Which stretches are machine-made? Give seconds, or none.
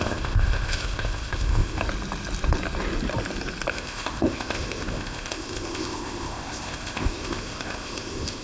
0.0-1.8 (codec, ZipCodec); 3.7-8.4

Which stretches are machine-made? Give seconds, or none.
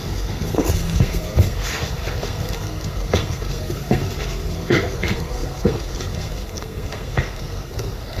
0.0-8.2 (codec, SNAC)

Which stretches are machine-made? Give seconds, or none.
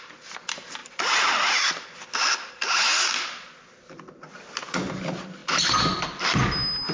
none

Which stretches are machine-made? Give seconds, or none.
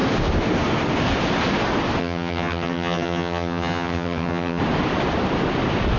2.0-4.6 (vocoder, HiFi-GAN)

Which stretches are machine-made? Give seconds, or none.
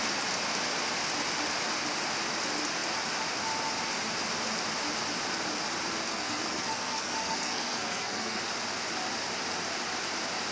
6.1-8.4 (codec, SNAC)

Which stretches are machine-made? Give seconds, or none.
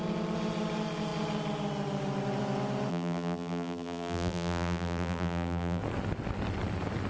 2.9-5.8 (vocoder, BigVGAN v2)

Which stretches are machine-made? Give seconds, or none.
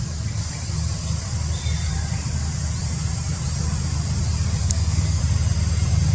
4.6-5.2 (codec, SNAC)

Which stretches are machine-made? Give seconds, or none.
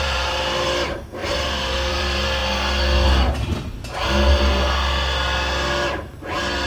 0.0-2.4 (vocoder, BigVGAN v2)